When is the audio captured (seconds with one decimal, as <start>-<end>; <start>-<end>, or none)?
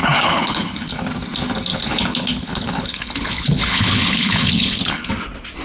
1.1-1.7; 5.1-5.6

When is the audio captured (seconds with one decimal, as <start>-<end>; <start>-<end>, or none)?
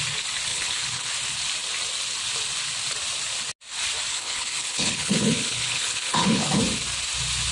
0.0-0.5; 1.1-4.1; 6.6-7.5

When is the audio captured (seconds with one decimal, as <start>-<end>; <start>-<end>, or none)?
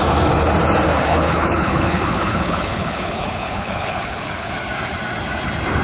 0.0-1.0; 4.5-5.8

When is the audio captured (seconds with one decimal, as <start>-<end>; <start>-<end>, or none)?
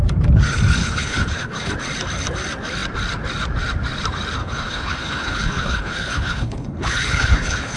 0.0-0.8; 1.7-4.4